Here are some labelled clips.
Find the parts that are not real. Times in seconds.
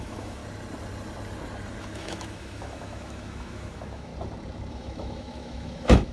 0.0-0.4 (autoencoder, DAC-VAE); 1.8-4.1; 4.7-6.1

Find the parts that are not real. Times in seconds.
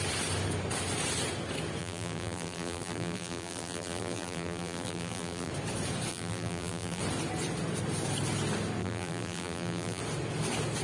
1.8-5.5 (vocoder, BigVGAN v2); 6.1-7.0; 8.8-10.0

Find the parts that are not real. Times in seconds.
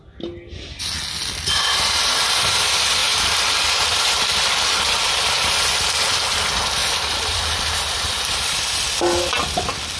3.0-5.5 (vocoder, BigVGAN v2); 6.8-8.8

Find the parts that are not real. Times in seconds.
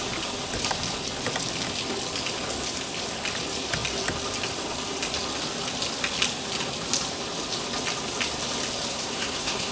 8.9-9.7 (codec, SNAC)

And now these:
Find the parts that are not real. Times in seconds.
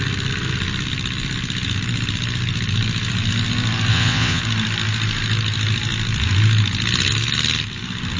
3.9-4.4 (vocoder, WaveNeXt)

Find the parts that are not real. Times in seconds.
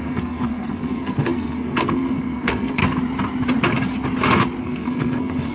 0.0-2.8 (codec, SNAC); 4.6-5.5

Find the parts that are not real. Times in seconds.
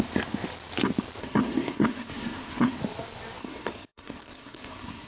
1.2-2.8 (codec, SNAC); 3.4-5.1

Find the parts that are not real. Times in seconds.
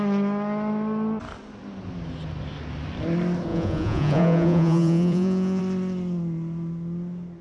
3.5-5.6 (vocoder, Vocos)